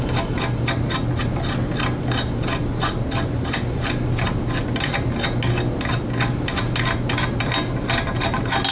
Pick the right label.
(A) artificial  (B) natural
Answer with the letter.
B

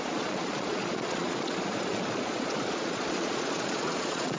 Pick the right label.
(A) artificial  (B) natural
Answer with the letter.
A